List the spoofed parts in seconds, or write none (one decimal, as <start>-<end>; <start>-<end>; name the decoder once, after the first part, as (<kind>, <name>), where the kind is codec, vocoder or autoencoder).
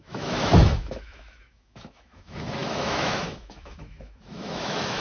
0.0-5.0 (autoencoder, DAC-VAE)